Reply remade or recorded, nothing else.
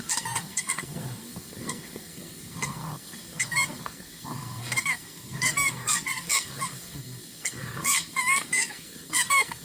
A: remade